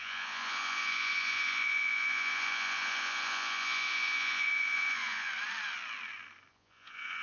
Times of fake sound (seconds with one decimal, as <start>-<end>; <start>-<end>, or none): 0.0-5.3; 6.5-7.2